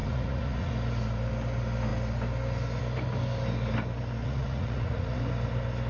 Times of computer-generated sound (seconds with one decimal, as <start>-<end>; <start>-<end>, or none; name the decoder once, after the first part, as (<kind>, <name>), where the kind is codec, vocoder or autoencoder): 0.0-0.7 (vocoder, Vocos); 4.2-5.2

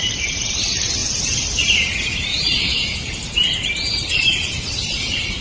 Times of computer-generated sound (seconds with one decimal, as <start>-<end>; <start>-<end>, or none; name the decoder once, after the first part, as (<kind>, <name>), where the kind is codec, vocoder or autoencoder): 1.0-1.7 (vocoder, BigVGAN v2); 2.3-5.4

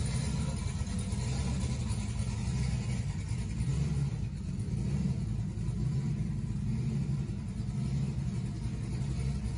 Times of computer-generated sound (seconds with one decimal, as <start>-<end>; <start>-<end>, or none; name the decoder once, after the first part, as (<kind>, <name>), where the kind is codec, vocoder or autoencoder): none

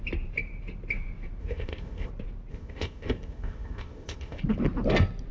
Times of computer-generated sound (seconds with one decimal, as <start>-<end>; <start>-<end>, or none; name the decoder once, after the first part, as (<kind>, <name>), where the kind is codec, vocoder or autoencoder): 1.4-2.1 (codec, ZipCodec); 2.5-4.4

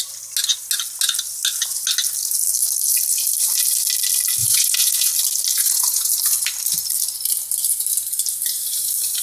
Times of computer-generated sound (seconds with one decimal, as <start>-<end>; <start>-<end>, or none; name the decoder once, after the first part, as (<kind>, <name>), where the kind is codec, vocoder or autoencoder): 4.4-5.1 (vocoder, Vocos); 5.5-6.1

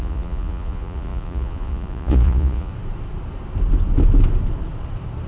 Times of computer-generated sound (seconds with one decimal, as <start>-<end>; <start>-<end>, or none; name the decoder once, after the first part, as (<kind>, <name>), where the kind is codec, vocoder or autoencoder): 0.0-2.7 (vocoder, Vocos)